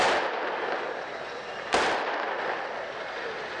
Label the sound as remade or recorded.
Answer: recorded